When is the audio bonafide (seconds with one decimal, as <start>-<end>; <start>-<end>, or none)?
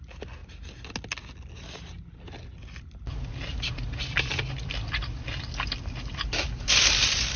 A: 0.0-7.4